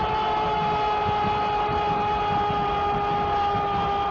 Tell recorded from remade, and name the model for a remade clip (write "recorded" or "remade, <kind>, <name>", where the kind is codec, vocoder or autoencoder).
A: recorded